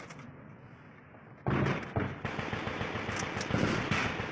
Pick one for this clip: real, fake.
real